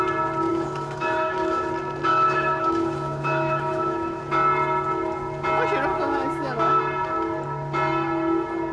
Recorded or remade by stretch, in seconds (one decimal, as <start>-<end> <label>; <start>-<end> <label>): 0.0-0.5 recorded; 0.5-1.7 remade; 1.7-2.1 recorded; 2.1-4.2 remade; 4.2-5.9 recorded; 5.9-6.8 remade; 6.8-8.7 recorded